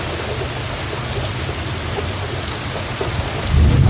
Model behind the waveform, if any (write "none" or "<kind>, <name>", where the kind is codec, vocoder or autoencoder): none